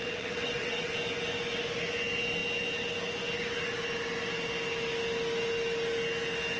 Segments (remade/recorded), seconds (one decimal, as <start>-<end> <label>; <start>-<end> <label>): 0.0-0.9 remade; 0.9-6.6 recorded